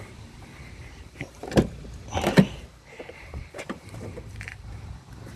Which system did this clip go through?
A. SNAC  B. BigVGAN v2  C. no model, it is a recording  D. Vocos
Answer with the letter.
B